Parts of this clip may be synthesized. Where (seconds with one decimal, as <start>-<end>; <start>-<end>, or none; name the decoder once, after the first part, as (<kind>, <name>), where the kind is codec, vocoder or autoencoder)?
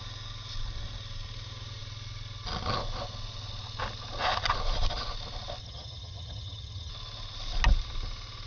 5.6-6.9 (vocoder, HiFi-GAN)